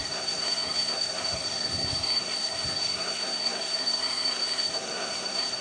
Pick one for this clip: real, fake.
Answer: fake